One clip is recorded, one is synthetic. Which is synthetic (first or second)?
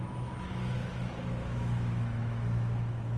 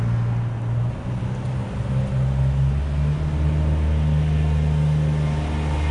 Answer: first